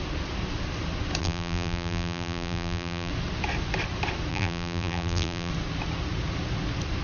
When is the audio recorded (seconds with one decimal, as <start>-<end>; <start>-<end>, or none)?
0.0-1.2; 3.1-4.3; 5.5-7.0